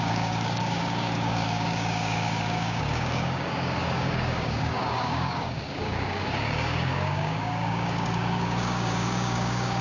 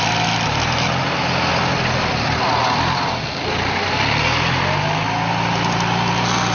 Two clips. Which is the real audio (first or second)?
second